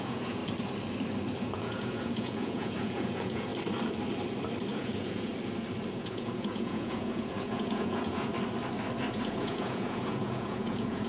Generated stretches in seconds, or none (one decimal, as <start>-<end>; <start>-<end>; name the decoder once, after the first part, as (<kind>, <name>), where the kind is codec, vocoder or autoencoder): 0.0-0.4 (vocoder, Vocos); 1.4-3.5; 4.7-5.3; 5.9-8.3; 9.1-11.1